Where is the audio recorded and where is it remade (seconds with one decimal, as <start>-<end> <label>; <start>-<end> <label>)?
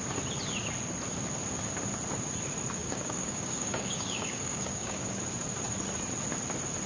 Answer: 0.0-2.8 recorded; 2.8-5.2 remade; 5.2-6.9 recorded